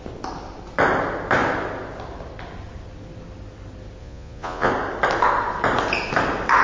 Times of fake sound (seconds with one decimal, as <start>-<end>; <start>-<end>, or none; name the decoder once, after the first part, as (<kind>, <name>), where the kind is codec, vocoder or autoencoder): 4.0-4.7 (vocoder, Vocos)